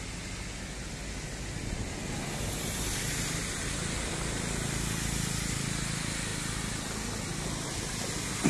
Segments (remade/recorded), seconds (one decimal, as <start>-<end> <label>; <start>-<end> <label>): 0.0-8.5 recorded